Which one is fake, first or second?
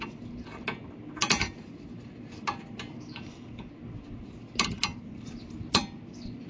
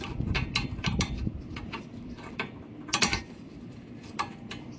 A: second